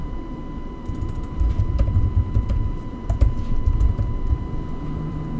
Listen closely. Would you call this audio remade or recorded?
remade